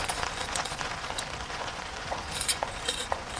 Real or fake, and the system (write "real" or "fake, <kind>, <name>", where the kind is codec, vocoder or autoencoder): fake, vocoder, Vocos